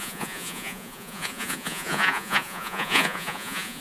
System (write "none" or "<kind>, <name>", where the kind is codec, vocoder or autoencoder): vocoder, Vocos